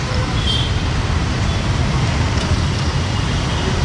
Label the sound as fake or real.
fake